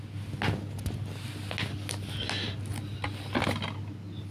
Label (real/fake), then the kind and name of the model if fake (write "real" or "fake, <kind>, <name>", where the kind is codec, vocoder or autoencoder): real